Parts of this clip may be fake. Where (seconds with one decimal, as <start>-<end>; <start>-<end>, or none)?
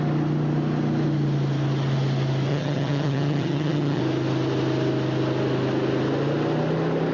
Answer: 2.5-4.0